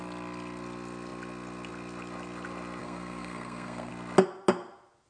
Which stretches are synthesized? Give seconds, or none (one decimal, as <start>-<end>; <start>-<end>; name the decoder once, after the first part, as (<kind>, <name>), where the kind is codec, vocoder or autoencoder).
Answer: 2.8-3.9 (codec, SNAC)